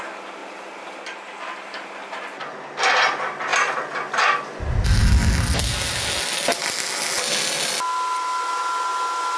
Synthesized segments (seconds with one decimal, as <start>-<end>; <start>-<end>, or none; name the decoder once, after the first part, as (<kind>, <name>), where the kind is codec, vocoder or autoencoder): none